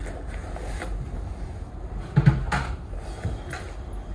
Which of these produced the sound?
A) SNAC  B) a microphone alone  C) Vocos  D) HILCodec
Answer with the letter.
B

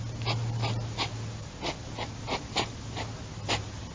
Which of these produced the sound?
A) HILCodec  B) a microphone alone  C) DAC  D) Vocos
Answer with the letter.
B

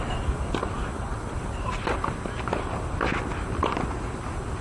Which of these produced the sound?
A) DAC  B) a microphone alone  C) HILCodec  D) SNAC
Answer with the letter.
B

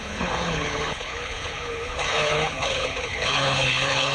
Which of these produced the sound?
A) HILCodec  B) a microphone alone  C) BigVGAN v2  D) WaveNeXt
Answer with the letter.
A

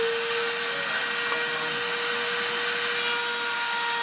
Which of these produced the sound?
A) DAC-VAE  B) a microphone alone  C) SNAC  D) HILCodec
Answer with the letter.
B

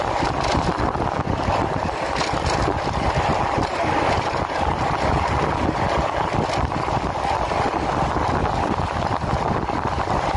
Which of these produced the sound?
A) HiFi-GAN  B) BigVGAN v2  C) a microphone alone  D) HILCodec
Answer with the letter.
C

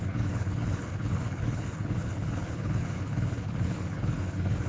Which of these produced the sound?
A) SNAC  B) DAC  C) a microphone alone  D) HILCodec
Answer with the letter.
D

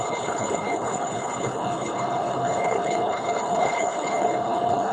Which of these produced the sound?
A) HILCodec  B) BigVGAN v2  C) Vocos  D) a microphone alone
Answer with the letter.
A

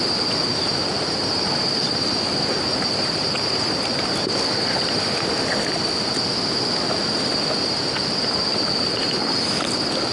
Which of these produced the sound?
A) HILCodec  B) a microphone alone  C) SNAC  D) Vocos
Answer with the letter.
B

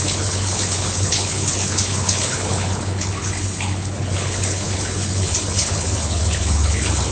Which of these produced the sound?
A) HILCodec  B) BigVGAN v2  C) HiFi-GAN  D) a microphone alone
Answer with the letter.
A